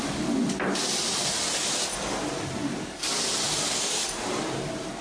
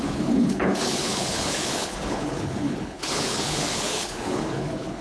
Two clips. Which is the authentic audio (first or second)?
first